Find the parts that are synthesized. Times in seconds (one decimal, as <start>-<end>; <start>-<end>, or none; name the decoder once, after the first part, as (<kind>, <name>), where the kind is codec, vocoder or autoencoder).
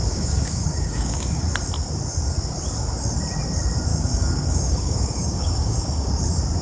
0.0-1.4 (codec, DAC); 3.9-6.1